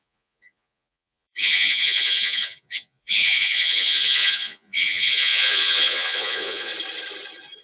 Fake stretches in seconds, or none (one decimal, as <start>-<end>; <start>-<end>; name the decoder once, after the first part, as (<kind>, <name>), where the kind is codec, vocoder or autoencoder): 0.0-6.7 (vocoder, Vocos)